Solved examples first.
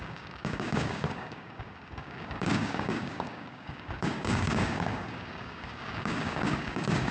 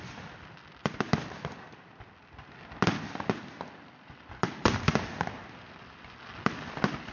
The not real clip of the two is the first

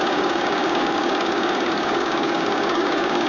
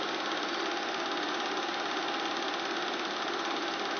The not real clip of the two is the first